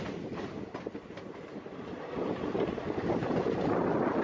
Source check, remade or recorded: recorded